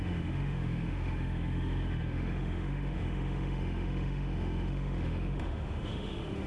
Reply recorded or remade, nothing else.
remade